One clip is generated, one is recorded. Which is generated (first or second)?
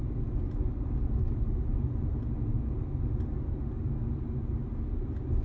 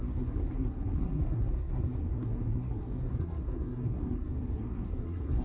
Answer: second